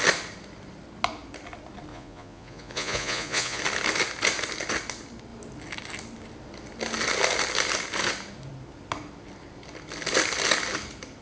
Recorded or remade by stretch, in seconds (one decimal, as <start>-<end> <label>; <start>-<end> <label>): 0.0-1.9 recorded; 1.9-3.6 remade; 3.6-11.2 recorded